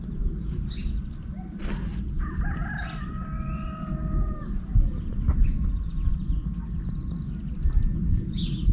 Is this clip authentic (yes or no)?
yes